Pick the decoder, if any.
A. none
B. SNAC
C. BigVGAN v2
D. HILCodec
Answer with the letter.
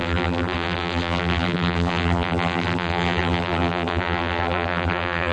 C